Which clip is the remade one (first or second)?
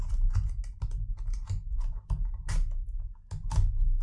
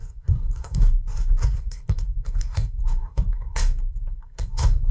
second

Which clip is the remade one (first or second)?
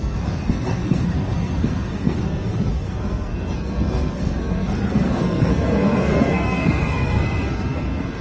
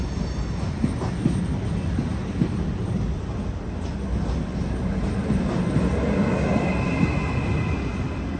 first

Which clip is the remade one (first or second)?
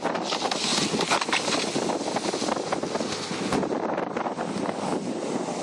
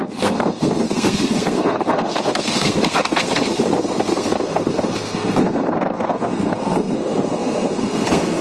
second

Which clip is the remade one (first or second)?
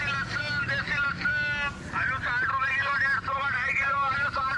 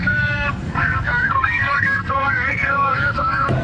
second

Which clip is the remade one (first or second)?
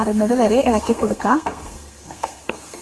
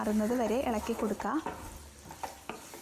first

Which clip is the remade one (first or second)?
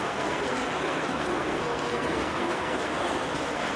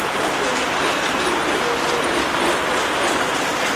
first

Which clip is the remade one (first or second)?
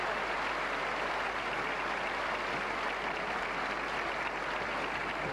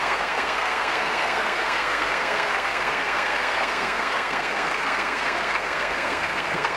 second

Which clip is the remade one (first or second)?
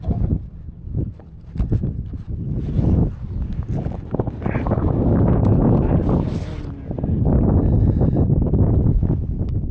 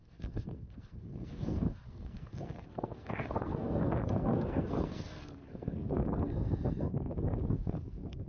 second